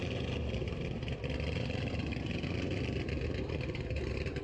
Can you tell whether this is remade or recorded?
remade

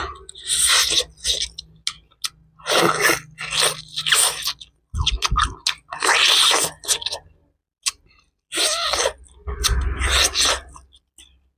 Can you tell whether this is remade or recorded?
recorded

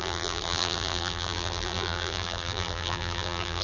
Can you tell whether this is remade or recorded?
remade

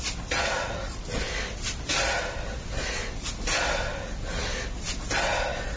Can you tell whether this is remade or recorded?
recorded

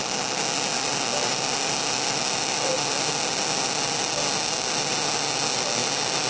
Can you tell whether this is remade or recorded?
recorded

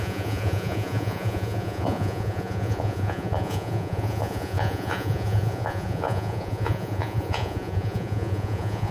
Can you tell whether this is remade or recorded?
remade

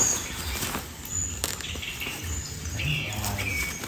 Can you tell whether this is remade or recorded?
recorded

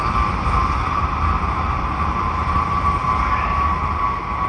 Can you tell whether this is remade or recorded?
recorded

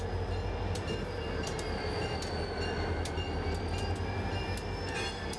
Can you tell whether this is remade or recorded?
recorded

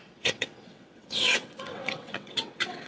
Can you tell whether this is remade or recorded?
remade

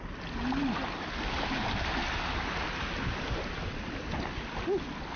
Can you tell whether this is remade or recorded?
recorded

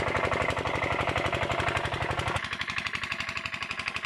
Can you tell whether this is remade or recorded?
recorded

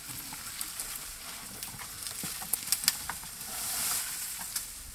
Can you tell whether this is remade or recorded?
recorded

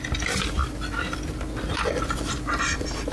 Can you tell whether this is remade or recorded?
recorded